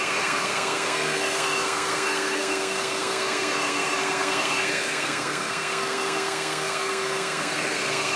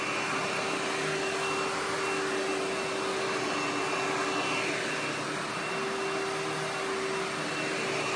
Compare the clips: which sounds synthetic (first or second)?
first